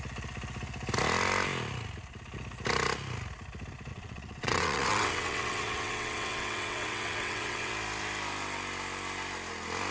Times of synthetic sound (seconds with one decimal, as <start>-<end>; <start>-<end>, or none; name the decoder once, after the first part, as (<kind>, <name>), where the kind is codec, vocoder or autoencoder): 3.9-7.7 (vocoder, WaveNeXt)